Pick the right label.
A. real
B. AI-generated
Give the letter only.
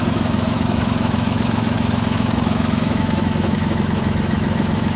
B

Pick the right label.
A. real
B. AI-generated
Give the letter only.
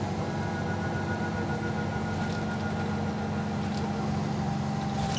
A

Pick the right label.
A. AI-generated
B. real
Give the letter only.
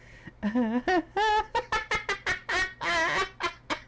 B